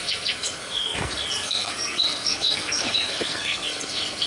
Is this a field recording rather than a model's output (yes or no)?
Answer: no